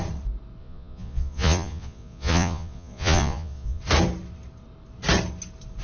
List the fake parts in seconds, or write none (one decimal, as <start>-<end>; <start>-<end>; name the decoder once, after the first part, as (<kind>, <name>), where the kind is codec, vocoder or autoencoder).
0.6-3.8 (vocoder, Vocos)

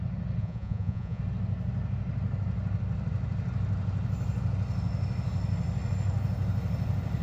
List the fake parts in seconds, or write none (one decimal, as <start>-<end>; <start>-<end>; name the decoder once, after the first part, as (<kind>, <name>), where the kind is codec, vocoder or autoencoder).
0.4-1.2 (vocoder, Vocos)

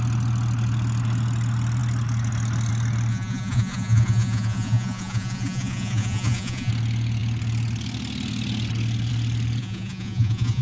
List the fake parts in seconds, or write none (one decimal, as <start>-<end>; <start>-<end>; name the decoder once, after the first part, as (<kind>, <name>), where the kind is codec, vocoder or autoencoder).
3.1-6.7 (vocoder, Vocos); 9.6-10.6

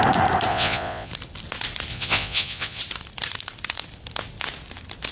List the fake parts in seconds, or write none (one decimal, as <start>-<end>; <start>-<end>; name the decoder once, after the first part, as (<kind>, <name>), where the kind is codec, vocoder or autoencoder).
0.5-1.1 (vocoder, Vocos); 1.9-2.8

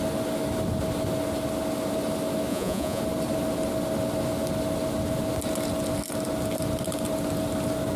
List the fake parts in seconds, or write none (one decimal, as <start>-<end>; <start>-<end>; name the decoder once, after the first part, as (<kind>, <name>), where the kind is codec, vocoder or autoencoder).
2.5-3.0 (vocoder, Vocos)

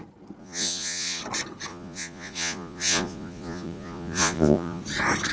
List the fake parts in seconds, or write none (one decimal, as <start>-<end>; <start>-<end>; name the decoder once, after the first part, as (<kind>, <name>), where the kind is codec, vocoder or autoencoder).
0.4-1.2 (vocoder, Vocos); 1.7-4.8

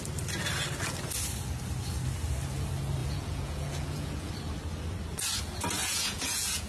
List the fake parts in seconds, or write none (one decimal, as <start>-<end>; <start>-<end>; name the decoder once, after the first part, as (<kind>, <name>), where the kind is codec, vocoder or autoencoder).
3.0-4.3 (vocoder, Vocos); 5.8-6.7